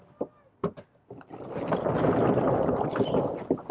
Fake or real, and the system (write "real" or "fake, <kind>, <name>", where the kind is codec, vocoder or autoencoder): real